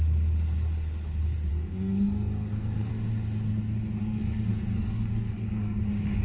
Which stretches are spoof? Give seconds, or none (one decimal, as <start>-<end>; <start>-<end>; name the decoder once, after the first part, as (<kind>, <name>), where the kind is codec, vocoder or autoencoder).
1.5-2.9 (codec, SNAC); 4.0-5.8